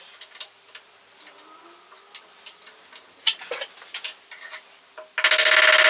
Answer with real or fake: real